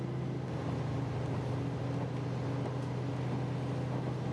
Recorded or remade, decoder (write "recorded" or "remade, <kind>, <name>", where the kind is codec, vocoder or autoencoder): recorded